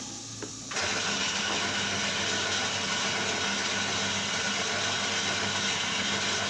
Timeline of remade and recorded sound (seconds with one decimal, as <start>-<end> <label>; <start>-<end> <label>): 0.0-6.5 recorded